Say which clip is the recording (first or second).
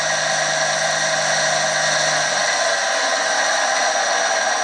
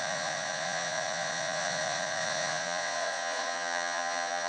first